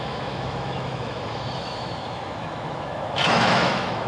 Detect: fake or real fake